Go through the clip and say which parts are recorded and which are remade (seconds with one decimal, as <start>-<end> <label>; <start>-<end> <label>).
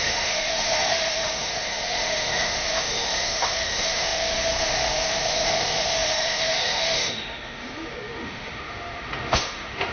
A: 0.0-9.9 remade